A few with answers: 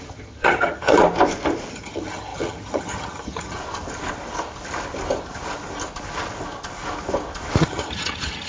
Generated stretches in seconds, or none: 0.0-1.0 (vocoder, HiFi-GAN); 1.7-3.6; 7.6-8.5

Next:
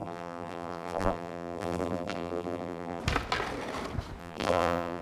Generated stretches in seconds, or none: 0.0-3.0 (vocoder, BigVGAN v2); 4.2-5.0

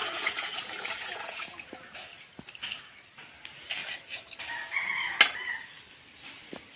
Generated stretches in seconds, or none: 0.0-1.6 (vocoder, Vocos)

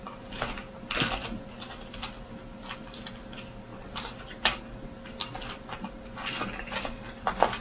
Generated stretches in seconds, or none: none

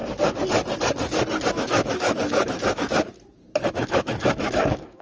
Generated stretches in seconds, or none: 1.5-3.1 (autoencoder, DAC-VAE); 3.7-5.0

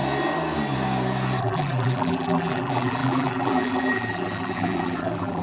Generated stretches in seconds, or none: 1.4-5.4 (vocoder, BigVGAN v2)